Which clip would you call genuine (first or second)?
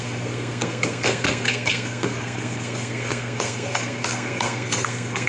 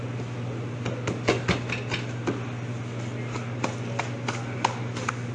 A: second